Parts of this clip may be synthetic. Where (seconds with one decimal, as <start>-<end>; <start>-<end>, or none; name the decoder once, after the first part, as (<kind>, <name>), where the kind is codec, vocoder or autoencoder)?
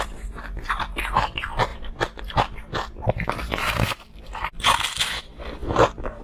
0.0-6.2 (vocoder, BigVGAN v2)